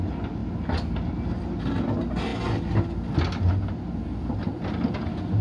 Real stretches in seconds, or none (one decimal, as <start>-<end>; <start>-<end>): 0.0-5.4